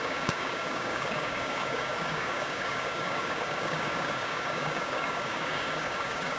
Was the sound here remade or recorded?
remade